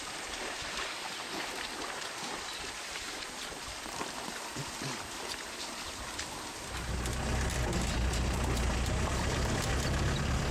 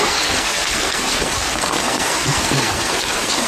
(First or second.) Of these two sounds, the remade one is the second